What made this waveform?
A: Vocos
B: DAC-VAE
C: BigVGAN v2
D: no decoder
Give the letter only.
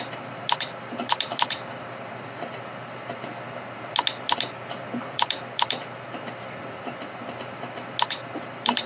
D